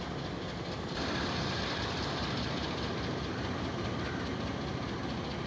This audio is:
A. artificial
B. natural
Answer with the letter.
B